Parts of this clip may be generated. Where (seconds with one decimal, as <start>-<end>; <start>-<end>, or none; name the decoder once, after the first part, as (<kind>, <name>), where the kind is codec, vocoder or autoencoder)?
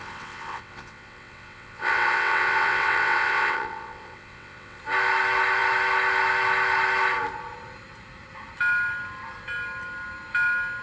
0.0-4.8 (vocoder, WaveNeXt)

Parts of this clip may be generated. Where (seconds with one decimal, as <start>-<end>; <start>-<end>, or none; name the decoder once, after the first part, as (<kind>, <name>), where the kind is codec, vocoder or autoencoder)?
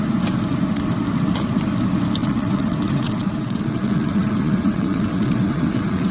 2.2-6.1 (vocoder, WaveNeXt)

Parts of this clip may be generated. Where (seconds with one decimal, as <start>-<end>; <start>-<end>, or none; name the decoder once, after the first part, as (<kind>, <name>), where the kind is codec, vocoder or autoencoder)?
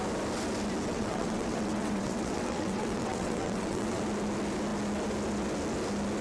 0.9-4.0 (vocoder, WaveNeXt)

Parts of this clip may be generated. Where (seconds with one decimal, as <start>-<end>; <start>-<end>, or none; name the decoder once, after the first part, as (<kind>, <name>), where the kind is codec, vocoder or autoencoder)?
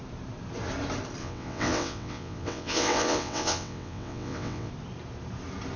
1.2-4.7 (vocoder, WaveNeXt)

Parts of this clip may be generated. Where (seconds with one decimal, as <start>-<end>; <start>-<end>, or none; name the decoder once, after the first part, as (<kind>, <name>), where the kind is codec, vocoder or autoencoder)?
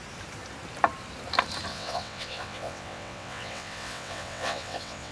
1.7-5.1 (vocoder, WaveNeXt)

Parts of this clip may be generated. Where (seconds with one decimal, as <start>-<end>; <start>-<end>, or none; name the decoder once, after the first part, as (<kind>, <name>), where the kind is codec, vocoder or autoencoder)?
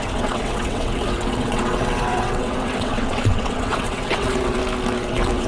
0.0-4.6 (vocoder, WaveNeXt); 5.1-5.5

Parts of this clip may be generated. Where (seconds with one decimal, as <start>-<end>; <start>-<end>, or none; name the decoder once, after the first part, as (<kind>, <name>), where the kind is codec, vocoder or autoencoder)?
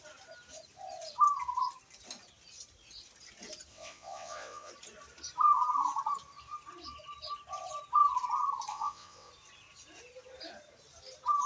3.7-4.7 (vocoder, WaveNeXt); 8.7-9.3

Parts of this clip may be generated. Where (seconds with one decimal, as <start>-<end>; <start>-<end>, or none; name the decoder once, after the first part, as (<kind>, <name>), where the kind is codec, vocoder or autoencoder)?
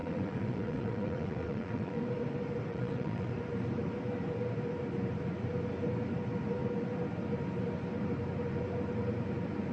0.0-2.0 (vocoder, WaveNeXt); 2.7-3.3